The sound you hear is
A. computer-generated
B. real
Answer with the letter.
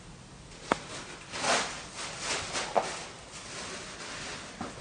B